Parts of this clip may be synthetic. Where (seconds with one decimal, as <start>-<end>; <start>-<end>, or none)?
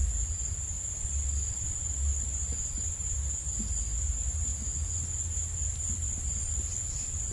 0.9-3.2; 4.1-4.5; 5.2-7.3